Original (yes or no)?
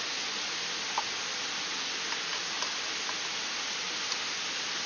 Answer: yes